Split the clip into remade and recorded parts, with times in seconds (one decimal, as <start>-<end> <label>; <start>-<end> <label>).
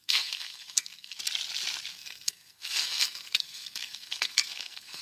0.0-1.2 remade; 1.2-1.9 recorded; 1.9-5.0 remade